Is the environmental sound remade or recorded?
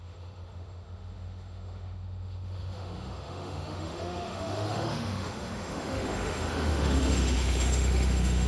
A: remade